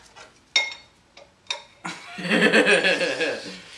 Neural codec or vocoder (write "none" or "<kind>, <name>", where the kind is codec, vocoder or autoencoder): none